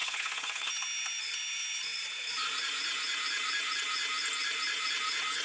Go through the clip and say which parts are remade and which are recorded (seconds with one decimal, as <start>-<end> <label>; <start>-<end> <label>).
0.0-0.7 remade; 0.7-5.4 recorded